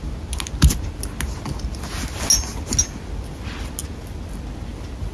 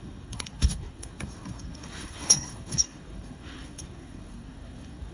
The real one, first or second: first